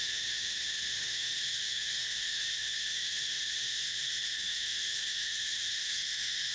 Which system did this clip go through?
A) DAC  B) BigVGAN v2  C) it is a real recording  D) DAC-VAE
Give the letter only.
D